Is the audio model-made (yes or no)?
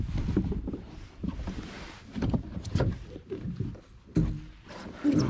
yes